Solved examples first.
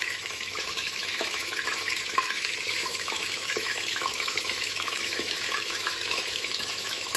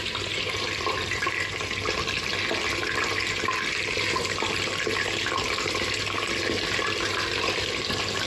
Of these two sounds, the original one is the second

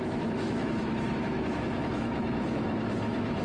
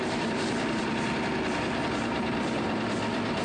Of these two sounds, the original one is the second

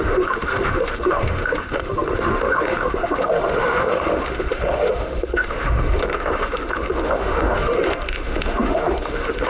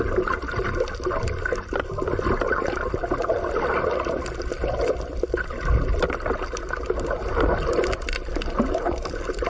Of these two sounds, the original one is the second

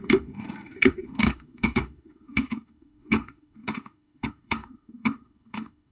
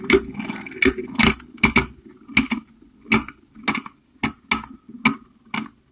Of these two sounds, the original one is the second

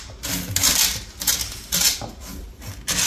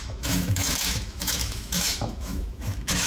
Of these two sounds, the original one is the first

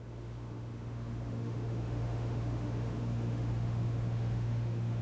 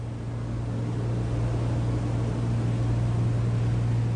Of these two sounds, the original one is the second